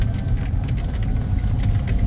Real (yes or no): yes